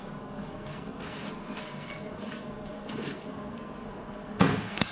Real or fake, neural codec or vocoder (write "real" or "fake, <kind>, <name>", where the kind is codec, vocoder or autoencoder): fake, codec, SNAC